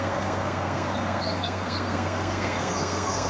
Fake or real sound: fake